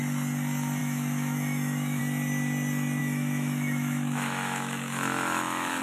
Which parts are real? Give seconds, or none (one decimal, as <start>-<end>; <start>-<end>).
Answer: 0.0-0.8; 2.0-3.0